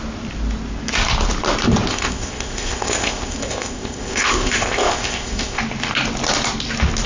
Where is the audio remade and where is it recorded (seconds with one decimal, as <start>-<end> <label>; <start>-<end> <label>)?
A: 0.0-1.9 recorded; 1.9-5.6 remade; 5.6-7.1 recorded